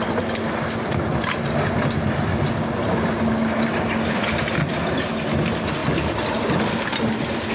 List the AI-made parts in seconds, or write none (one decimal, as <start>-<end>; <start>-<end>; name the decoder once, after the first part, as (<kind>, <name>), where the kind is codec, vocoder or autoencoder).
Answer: none